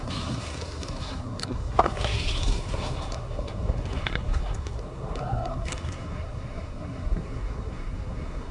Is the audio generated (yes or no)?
yes